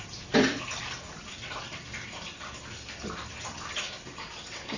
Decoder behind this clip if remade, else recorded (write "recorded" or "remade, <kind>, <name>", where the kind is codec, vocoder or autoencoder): recorded